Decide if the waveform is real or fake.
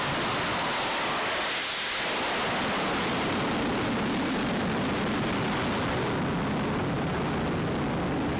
real